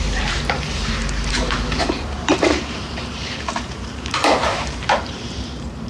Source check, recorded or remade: remade